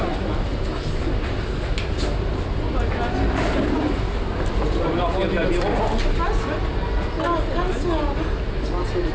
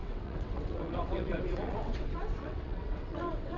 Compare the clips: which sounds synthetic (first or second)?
second